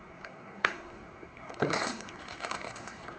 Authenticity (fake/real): fake